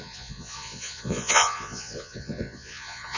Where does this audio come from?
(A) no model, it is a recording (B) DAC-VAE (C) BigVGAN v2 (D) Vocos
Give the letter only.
D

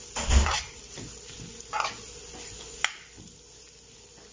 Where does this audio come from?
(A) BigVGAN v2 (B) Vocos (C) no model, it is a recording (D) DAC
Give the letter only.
C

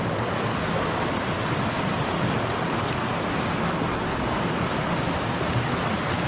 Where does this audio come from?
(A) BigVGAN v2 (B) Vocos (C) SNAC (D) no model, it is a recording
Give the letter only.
D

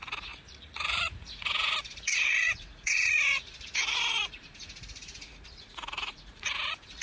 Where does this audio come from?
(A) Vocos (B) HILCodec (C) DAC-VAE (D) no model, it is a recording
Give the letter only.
A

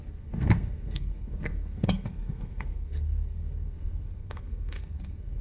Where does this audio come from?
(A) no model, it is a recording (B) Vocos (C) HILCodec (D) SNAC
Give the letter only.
D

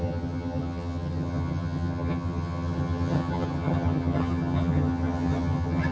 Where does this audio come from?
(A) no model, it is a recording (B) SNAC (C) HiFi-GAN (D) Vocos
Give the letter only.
C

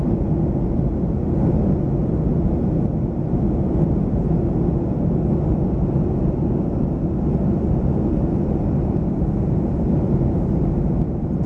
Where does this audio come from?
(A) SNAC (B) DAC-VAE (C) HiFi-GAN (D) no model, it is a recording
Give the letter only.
D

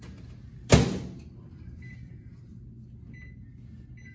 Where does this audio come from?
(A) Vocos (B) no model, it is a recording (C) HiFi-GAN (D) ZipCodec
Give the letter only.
B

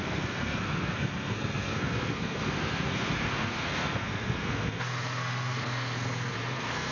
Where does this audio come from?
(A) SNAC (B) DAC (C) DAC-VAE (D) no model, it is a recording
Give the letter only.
A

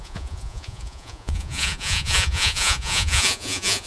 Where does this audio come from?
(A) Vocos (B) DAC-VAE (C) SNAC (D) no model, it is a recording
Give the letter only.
A